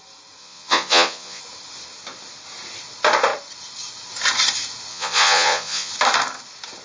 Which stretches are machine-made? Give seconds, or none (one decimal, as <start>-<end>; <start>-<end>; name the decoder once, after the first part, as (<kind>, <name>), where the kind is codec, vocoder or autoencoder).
0.4-1.4 (vocoder, Vocos); 4.9-5.9